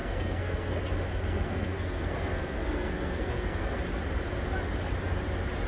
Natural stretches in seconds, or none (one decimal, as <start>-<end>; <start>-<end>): 0.7-1.1; 3.8-5.7